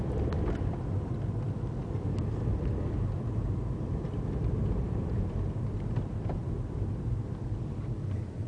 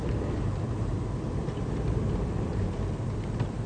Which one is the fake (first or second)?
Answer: first